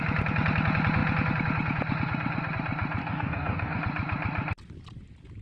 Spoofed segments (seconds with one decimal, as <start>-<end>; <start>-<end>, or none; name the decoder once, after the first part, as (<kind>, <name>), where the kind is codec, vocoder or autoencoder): 3.0-3.8 (codec, DAC)